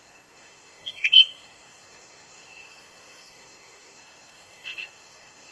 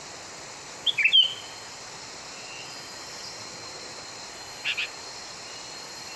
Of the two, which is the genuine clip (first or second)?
second